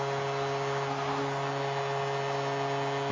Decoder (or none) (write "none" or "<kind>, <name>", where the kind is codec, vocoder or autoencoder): none